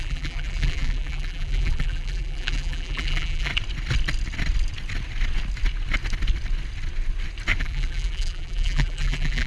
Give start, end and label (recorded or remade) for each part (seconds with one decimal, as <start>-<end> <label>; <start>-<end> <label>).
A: 0.0-3.5 remade; 3.5-7.6 recorded; 7.6-9.5 remade